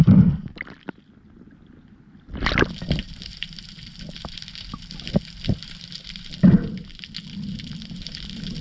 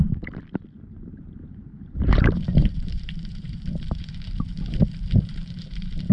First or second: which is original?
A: first